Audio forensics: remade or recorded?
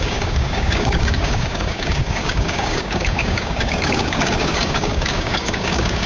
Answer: remade